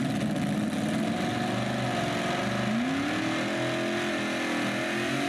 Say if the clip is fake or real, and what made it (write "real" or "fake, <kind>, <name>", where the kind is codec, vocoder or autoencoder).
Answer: real